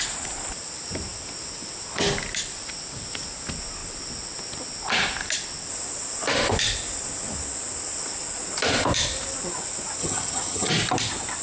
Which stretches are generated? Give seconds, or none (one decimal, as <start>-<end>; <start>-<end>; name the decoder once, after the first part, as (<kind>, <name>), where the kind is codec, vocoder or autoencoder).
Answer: 10.0-10.7 (vocoder, HiFi-GAN)